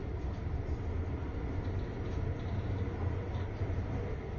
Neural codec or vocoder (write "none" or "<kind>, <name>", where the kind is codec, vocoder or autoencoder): none